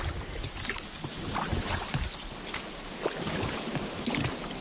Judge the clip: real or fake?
real